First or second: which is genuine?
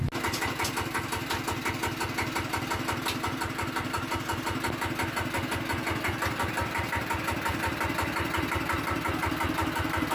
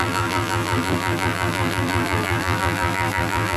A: first